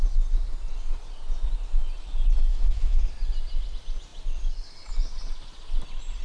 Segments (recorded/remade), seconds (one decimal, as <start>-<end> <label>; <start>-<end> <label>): 0.0-2.5 recorded; 2.5-3.0 remade; 3.0-6.2 recorded